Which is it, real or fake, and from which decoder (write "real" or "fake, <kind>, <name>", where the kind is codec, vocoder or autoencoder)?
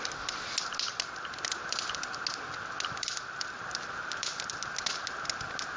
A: real